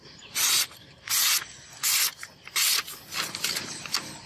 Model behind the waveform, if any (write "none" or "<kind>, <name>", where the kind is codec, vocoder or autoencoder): none